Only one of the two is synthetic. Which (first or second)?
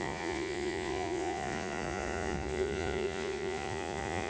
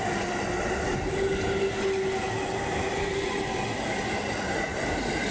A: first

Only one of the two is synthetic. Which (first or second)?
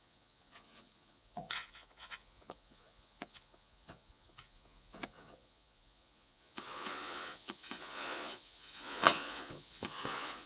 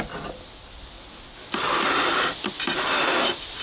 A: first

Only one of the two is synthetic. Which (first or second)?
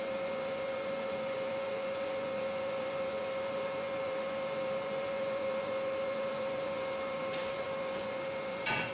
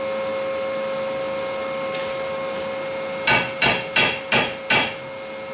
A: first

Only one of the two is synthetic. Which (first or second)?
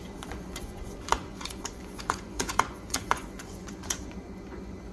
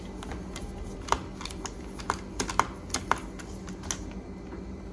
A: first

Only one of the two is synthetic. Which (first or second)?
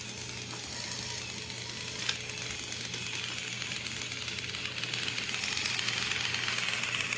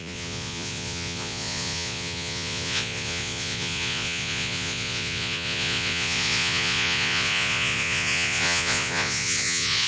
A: second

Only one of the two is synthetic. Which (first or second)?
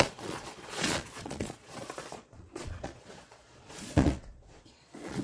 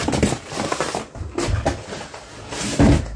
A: first